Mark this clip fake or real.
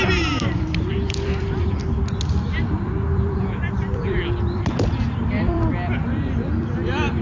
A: fake